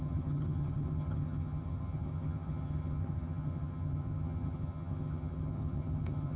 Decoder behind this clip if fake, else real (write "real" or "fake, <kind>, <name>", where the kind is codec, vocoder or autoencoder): fake, vocoder, HiFi-GAN